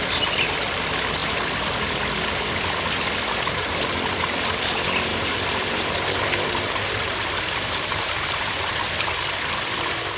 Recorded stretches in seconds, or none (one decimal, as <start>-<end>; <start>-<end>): 0.0-5.1; 8.7-10.2

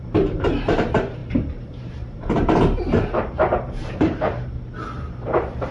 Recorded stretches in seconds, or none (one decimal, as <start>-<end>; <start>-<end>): none

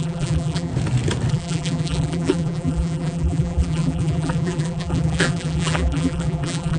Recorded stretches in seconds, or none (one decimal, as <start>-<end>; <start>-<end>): 0.7-1.3

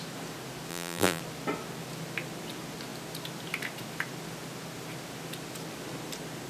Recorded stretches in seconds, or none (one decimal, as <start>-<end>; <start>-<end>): 0.0-0.7; 1.2-6.5

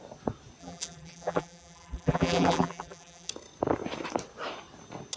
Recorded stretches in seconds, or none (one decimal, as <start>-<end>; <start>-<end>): 0.0-0.6; 3.3-5.2